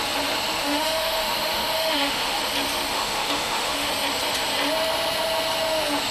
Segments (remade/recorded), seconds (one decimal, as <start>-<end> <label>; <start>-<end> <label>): 0.0-0.6 recorded; 0.6-2.4 remade; 2.4-2.9 recorded; 2.9-3.9 remade; 3.9-6.1 recorded